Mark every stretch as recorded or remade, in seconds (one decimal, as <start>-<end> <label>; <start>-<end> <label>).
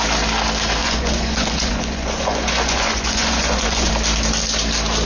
0.0-0.8 recorded; 0.8-3.9 remade; 3.9-5.1 recorded